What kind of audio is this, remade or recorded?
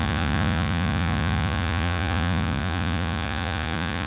remade